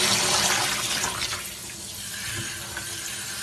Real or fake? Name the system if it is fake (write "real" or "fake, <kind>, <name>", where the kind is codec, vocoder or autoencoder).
real